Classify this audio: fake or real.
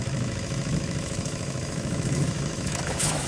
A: fake